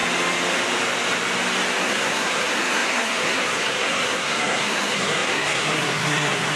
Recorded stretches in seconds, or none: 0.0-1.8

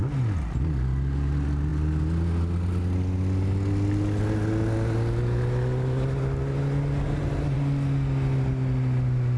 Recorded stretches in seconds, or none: 0.0-9.4

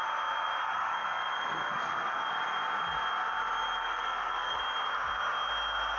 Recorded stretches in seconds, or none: 0.0-0.6; 2.3-3.8; 4.6-6.0

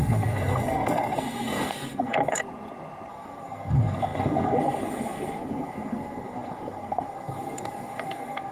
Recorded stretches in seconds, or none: 2.4-3.1

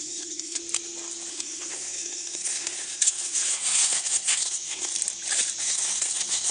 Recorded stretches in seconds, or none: 0.6-1.3; 4.9-5.6

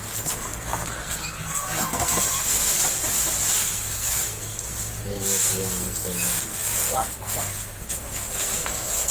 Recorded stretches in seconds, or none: 2.8-3.5

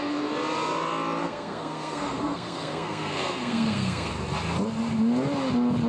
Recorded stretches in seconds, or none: 0.0-1.2; 4.1-5.9

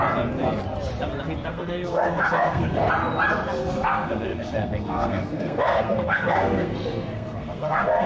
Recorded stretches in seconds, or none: 0.0-1.5; 2.9-3.6